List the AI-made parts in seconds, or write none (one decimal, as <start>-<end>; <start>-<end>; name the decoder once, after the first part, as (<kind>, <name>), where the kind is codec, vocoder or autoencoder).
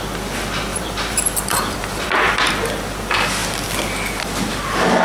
0.7-2.5 (vocoder, BigVGAN v2)